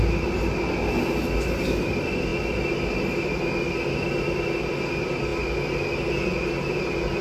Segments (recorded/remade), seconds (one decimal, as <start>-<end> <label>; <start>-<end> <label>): 0.0-7.2 recorded